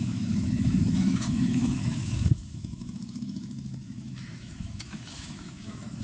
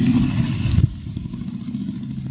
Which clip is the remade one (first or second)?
first